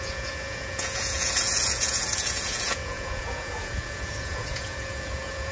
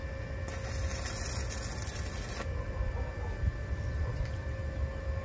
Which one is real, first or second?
second